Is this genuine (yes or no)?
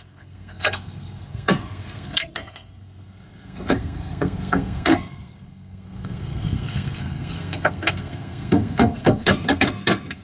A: no